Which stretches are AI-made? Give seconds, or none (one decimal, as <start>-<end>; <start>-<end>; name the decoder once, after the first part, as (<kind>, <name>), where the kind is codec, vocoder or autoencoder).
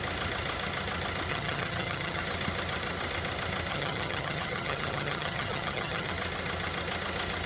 1.3-2.2 (vocoder, HiFi-GAN); 3.7-6.1